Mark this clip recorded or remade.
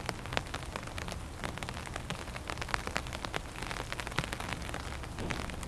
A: recorded